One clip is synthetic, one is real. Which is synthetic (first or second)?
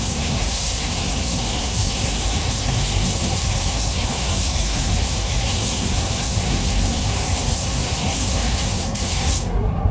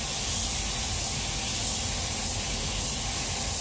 first